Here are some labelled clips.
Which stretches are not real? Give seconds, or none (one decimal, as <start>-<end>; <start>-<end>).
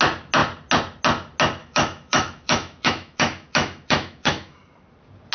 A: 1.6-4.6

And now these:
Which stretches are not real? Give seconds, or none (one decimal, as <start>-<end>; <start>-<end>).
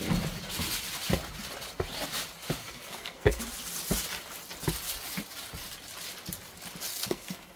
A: 2.6-3.4; 6.9-7.6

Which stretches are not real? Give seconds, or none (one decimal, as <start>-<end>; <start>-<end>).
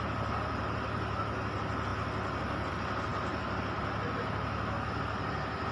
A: none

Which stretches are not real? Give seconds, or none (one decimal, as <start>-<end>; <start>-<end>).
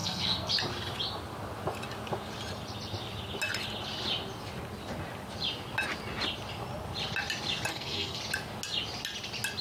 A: 0.0-0.5; 7.7-8.2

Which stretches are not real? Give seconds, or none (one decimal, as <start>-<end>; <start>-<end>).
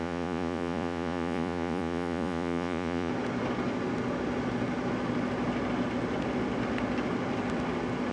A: 0.0-3.1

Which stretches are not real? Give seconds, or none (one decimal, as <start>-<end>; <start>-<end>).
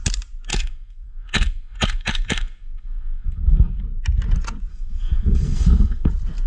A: 0.5-3.8; 4.7-6.1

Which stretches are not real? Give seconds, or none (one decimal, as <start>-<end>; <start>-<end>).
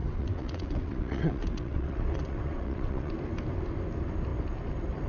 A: 0.0-3.1